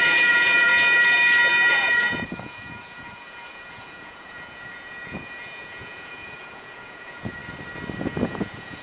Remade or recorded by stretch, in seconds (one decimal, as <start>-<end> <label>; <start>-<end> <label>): 0.0-0.7 remade; 0.7-1.7 recorded; 1.7-7.4 remade; 7.4-8.0 recorded; 8.0-8.8 remade